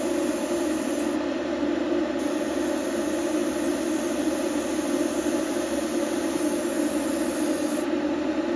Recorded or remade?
recorded